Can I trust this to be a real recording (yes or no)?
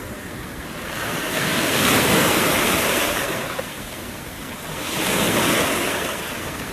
no